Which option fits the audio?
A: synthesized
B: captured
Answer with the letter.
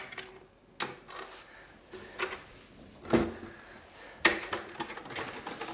B